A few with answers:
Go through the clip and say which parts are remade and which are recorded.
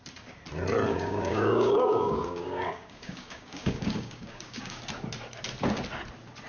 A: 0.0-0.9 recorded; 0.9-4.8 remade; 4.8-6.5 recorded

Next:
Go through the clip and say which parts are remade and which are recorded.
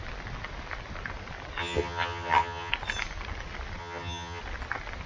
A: 0.0-1.6 recorded; 1.6-2.7 remade; 2.7-3.8 recorded; 3.8-4.4 remade; 4.4-5.1 recorded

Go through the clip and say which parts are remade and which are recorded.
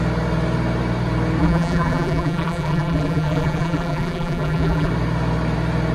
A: 0.0-1.4 recorded; 1.4-4.9 remade; 4.9-5.9 recorded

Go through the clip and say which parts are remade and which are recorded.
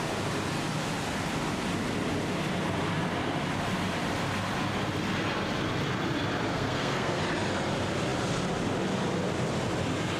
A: 0.0-6.5 recorded; 6.5-7.2 remade; 7.2-10.2 recorded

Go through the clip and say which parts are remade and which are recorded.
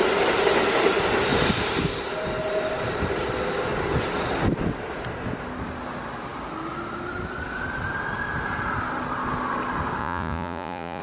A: 0.0-10.0 recorded; 10.0-11.0 remade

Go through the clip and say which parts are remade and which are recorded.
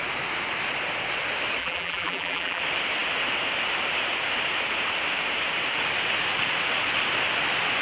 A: 0.0-1.6 recorded; 1.6-2.6 remade; 2.6-7.8 recorded